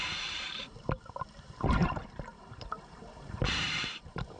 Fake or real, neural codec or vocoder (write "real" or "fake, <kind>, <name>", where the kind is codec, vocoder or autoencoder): fake, vocoder, BigVGAN v2